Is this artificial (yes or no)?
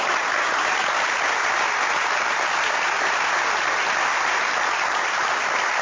no